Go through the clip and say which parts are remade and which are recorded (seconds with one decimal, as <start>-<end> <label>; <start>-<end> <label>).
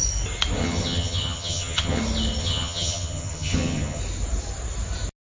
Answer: 0.0-0.6 recorded; 0.6-2.0 remade; 2.0-2.4 recorded; 2.4-4.0 remade; 4.0-5.3 recorded